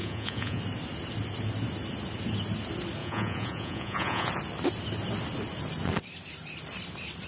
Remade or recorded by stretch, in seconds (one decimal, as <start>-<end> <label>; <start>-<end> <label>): 0.0-0.6 remade; 0.6-3.0 recorded; 3.0-4.3 remade; 4.3-7.3 recorded